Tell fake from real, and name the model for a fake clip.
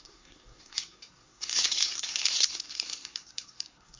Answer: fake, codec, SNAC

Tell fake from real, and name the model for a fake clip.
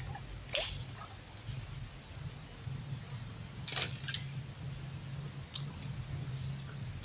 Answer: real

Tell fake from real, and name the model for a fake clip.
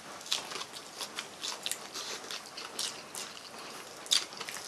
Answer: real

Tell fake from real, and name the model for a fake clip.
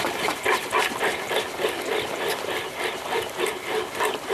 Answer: real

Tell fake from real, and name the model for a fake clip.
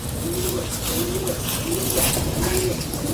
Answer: real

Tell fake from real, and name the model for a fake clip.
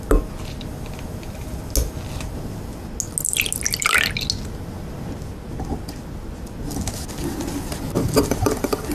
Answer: real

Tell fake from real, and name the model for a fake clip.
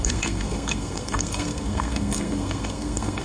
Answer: fake, codec, SNAC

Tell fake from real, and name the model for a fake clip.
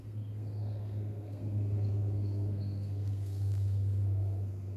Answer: fake, codec, SNAC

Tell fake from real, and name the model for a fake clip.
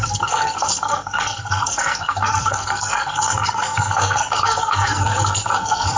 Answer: fake, codec, SNAC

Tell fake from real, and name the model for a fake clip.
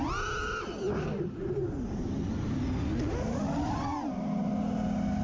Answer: real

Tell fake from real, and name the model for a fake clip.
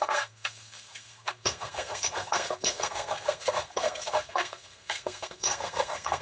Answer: fake, codec, SNAC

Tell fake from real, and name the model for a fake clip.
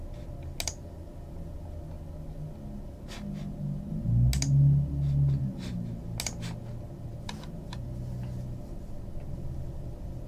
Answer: real